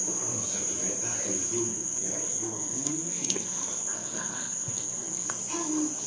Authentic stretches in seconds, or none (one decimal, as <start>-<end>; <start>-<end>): 0.0-1.7; 5.4-6.1

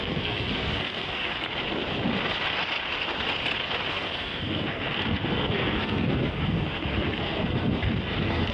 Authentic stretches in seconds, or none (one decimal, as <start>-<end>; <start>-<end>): 1.4-3.9

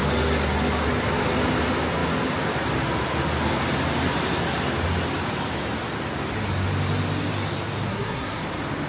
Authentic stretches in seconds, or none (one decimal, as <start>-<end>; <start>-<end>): 0.0-7.9; 8.4-8.9

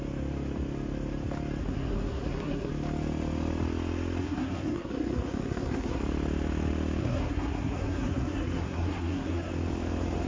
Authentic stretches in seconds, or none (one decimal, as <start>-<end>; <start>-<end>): 0.0-1.6; 2.7-4.2; 6.0-7.0; 9.5-10.3

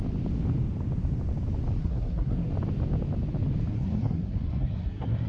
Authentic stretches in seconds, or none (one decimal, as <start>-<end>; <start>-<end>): 0.0-1.8; 2.5-3.7

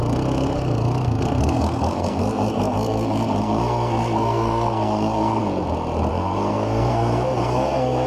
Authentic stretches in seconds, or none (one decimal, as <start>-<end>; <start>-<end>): 5.4-6.1

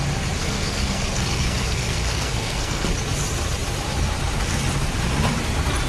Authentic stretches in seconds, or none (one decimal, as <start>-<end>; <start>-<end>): 0.0-0.4; 2.9-5.9

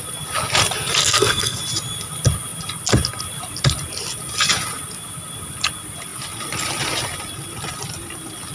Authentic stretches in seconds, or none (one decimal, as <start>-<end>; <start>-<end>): 0.0-1.0; 1.6-8.5